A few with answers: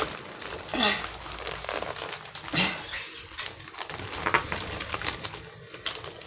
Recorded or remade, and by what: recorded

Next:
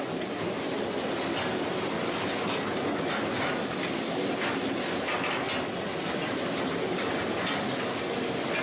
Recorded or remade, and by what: recorded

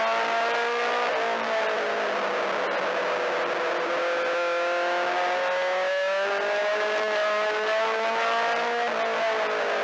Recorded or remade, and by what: recorded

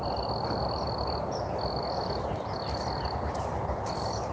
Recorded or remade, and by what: recorded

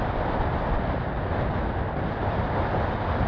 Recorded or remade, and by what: recorded